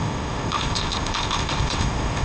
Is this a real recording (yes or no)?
no